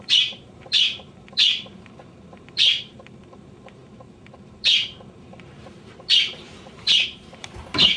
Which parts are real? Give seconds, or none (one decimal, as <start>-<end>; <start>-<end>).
none